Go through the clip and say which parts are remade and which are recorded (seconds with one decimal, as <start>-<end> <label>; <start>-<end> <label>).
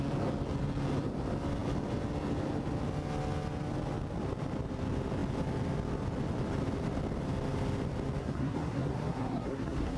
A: 0.0-8.2 recorded; 8.2-10.0 remade